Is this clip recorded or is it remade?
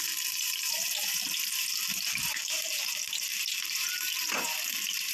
remade